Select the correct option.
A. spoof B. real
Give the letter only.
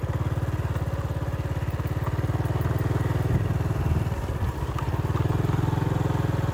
B